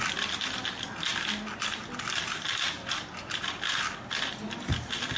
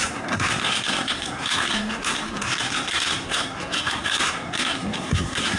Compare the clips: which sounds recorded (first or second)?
first